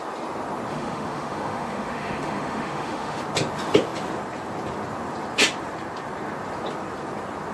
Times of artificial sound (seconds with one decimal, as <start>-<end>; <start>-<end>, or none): 0.7-3.2